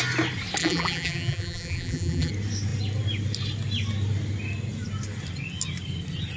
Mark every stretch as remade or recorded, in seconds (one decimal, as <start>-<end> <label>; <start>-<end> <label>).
0.0-0.6 recorded; 0.6-2.3 remade; 2.3-6.4 recorded